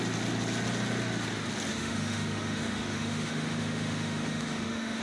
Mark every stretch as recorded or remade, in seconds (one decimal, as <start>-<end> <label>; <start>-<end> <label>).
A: 0.0-1.7 recorded; 1.7-5.0 remade